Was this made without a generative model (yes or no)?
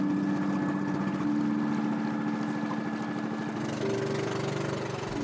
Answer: yes